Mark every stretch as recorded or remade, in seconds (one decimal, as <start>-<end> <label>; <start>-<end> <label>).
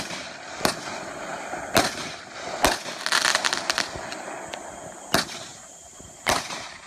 0.0-5.5 recorded; 5.5-6.9 remade